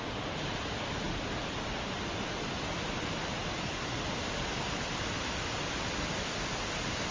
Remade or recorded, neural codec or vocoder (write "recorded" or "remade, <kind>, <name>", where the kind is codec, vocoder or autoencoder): recorded